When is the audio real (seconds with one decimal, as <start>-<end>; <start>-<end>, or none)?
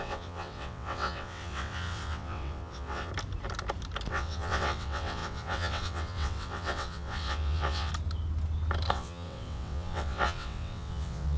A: 3.1-4.1; 7.9-8.9